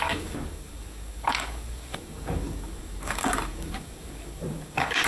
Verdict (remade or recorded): remade